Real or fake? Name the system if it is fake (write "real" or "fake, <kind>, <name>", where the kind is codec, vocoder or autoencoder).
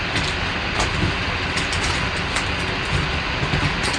real